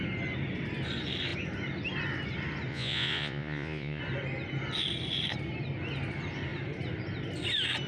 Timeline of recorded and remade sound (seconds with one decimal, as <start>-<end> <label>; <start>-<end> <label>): 0.0-2.7 recorded; 2.7-4.0 remade; 4.0-7.9 recorded